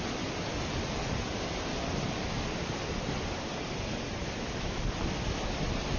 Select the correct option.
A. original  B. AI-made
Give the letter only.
A